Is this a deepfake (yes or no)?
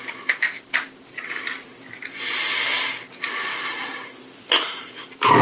yes